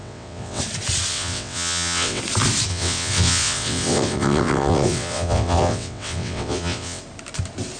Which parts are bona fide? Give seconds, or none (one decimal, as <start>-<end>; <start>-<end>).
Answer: 0.6-1.1; 2.2-2.7; 7.0-7.8